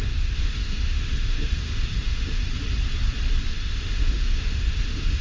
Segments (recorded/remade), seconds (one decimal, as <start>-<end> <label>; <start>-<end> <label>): 0.0-2.4 remade; 2.4-3.5 recorded; 3.5-5.2 remade